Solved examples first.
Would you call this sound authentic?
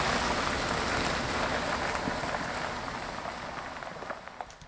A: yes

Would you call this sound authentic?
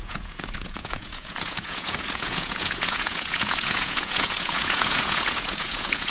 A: no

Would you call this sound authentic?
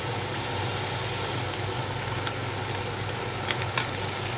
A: yes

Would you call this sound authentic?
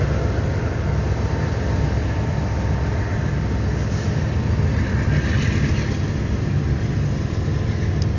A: yes